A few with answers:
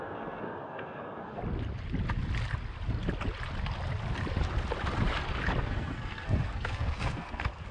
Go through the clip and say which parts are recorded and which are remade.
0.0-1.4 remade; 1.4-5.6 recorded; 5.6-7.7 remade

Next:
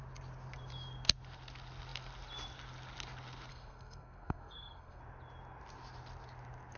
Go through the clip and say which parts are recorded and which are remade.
0.0-3.5 recorded; 3.5-5.0 remade; 5.0-6.8 recorded

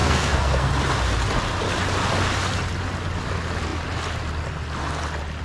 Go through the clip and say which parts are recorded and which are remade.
0.0-0.7 remade; 0.7-5.4 recorded